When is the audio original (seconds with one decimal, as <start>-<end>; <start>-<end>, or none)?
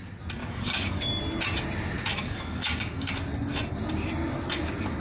0.0-0.4; 1.2-2.1; 3.1-5.0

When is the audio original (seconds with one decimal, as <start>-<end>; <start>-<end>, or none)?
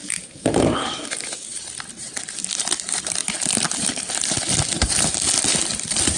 1.6-6.2